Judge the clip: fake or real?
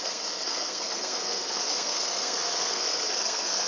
fake